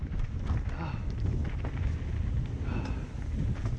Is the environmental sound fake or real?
real